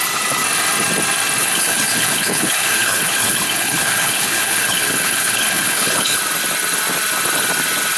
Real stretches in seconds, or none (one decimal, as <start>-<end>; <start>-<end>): 0.0-1.4; 6.2-8.0